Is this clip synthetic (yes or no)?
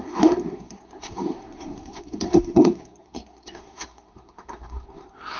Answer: yes